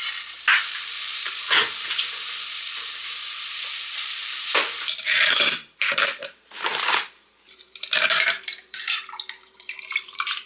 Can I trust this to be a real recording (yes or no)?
no